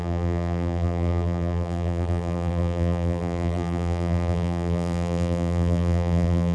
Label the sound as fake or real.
fake